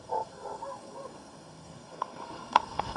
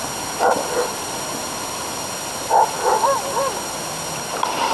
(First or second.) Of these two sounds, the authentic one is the second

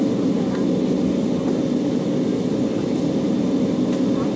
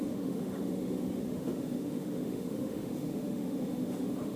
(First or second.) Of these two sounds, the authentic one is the first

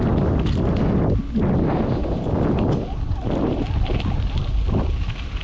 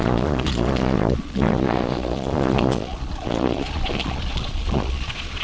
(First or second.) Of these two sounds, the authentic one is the first